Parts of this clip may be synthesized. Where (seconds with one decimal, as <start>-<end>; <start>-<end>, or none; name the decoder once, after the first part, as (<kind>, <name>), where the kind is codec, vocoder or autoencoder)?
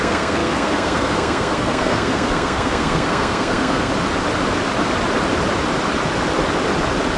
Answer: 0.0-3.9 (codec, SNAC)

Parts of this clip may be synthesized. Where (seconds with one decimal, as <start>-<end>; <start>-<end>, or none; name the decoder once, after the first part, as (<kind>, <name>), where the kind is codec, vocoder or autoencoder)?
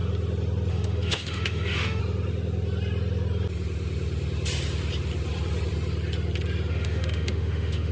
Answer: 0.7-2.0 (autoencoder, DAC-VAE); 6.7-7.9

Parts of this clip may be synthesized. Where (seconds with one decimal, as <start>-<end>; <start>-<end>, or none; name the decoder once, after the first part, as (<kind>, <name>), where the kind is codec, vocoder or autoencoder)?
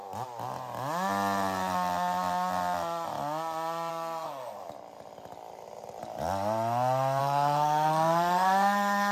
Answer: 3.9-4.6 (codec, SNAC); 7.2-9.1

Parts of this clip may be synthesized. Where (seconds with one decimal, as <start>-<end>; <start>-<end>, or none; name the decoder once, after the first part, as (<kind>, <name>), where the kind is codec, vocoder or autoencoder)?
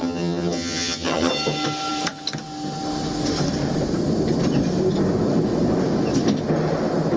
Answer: 0.0-1.3 (vocoder, HiFi-GAN)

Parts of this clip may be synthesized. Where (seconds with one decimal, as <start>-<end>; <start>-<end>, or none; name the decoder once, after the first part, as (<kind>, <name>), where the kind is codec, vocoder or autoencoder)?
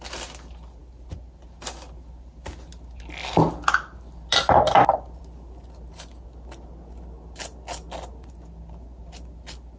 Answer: none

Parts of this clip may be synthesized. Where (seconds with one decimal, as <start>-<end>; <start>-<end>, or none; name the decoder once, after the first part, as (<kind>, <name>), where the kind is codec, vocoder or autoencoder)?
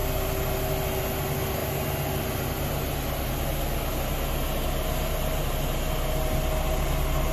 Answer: none